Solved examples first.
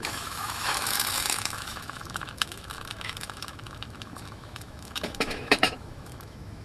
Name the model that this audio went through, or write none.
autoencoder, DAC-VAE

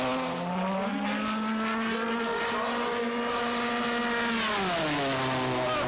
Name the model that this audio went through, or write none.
none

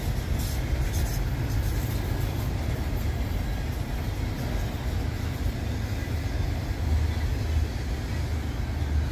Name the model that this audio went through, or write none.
none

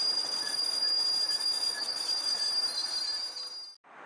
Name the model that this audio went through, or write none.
none